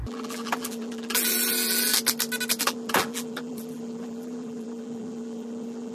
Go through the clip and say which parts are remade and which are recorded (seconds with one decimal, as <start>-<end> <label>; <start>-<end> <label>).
0.0-1.9 remade; 1.9-2.6 recorded; 2.6-5.9 remade